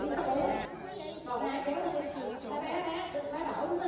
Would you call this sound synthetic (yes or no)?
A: no